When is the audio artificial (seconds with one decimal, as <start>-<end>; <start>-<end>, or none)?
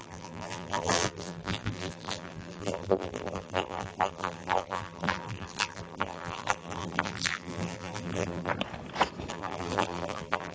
0.0-8.5; 9.3-10.5